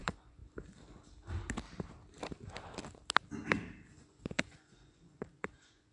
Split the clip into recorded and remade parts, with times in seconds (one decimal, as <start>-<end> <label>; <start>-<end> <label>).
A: 0.0-0.4 remade; 0.4-3.9 recorded; 3.9-5.9 remade